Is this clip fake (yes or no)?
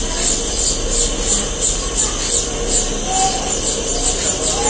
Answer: no